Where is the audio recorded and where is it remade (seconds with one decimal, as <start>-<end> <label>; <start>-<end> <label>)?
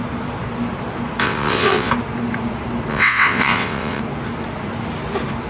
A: 0.0-1.2 recorded; 1.2-1.9 remade; 1.9-2.9 recorded; 2.9-4.0 remade; 4.0-5.5 recorded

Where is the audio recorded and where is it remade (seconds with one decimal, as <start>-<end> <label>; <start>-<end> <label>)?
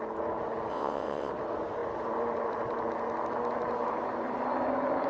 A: 0.0-0.7 recorded; 0.7-1.3 remade; 1.3-5.1 recorded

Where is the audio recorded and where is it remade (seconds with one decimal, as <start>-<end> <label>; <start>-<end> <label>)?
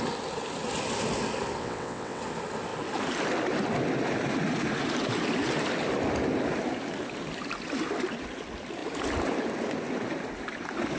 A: 0.0-1.6 recorded; 1.6-2.2 remade; 2.2-11.0 recorded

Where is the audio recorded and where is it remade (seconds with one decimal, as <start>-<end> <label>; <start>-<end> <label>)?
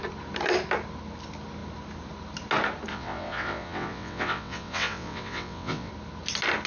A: 0.0-2.9 recorded; 2.9-5.9 remade; 5.9-6.7 recorded